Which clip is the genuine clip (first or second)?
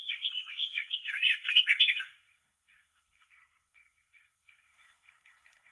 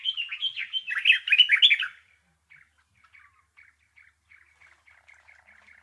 second